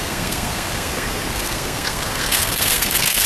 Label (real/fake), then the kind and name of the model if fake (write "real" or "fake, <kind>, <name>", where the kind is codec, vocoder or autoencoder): fake, codec, SNAC